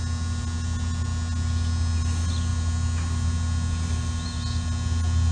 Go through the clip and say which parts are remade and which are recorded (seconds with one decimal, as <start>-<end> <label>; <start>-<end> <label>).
0.0-5.3 recorded